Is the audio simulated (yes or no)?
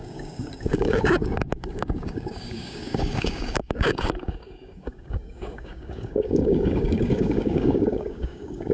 yes